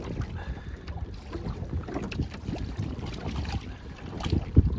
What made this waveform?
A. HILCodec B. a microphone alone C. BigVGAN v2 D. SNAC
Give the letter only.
B